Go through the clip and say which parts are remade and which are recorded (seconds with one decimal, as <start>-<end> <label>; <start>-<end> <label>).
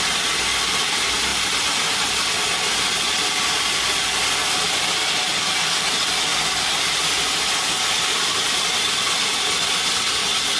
0.0-10.6 recorded